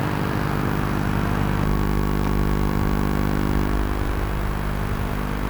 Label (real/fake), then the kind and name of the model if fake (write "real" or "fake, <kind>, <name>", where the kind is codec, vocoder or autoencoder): real